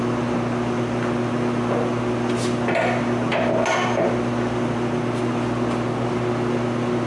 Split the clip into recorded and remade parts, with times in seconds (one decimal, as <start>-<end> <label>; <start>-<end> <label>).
0.0-7.1 recorded